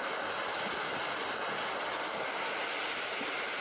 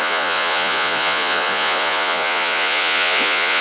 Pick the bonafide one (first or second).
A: first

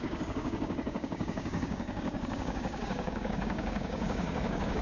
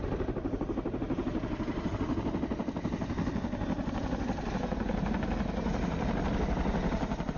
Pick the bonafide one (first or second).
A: second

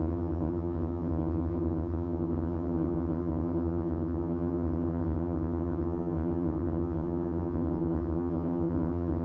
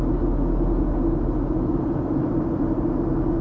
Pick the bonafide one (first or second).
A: second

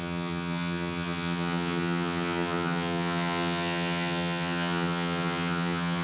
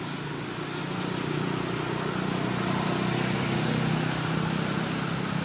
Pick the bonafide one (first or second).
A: second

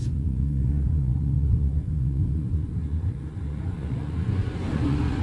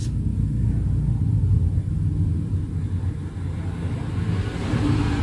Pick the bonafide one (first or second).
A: second